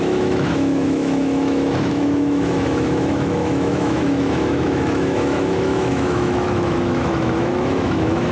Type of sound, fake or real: fake